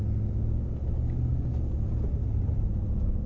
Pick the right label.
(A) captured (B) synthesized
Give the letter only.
A